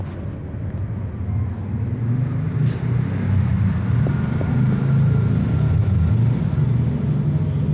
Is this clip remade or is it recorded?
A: recorded